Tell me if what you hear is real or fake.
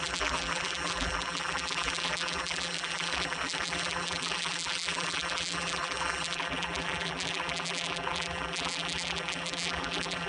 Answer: fake